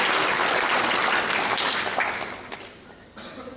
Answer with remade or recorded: recorded